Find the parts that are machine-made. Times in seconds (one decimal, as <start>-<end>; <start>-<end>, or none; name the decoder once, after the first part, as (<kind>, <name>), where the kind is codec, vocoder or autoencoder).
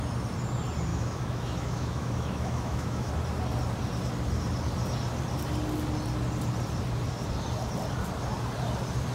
0.9-3.1 (autoencoder, DAC-VAE)